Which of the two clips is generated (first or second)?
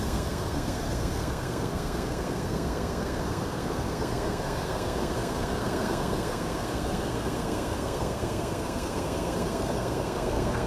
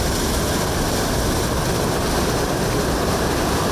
first